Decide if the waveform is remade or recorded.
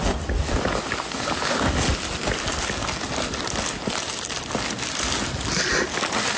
recorded